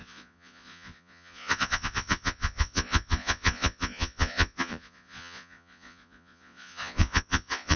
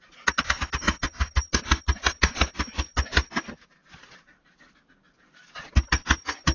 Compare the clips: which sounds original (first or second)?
second